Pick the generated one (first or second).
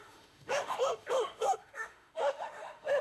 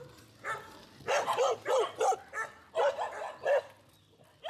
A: first